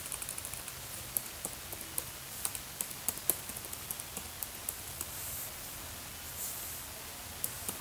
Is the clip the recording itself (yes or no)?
yes